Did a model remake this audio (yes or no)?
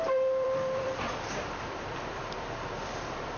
yes